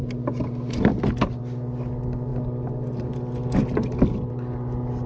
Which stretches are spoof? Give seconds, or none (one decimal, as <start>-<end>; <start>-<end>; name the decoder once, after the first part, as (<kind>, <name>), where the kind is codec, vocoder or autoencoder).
none